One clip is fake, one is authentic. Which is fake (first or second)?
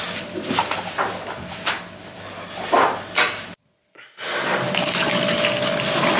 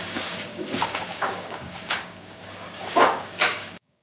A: second